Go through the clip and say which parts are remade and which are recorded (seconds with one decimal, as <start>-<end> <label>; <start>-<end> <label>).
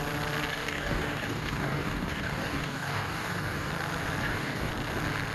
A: 0.0-0.5 recorded; 0.5-3.7 remade; 3.7-4.2 recorded; 4.2-4.7 remade; 4.7-5.3 recorded